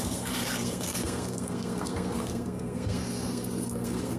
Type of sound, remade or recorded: remade